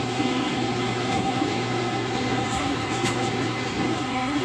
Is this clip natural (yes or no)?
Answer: no